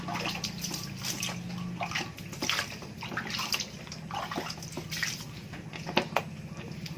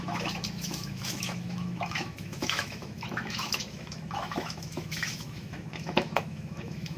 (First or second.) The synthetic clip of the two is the second